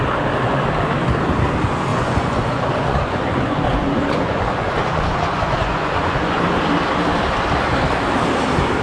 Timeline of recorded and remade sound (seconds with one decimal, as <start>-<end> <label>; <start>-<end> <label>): 0.0-1.9 recorded; 1.9-6.4 remade; 6.4-8.8 recorded